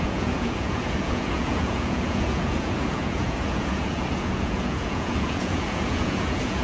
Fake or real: fake